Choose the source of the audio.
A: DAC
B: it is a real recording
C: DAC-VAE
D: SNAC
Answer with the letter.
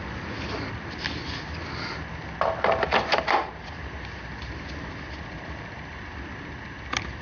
B